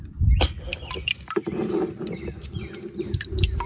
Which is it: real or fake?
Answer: real